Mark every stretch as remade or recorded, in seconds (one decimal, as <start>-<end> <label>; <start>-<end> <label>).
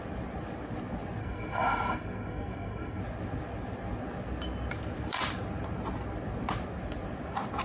0.0-1.2 recorded; 1.2-3.0 remade; 3.0-7.6 recorded